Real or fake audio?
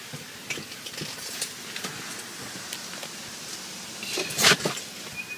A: real